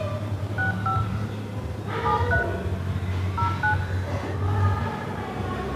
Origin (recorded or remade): recorded